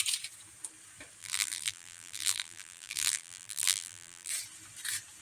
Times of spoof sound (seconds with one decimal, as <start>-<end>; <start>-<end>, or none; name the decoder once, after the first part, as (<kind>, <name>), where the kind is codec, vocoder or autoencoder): 1.2-4.3 (vocoder, BigVGAN v2)